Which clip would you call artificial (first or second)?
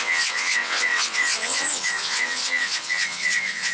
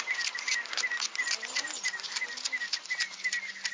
first